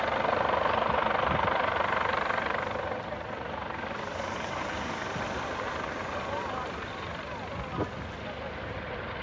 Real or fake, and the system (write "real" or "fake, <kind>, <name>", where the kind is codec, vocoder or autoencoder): real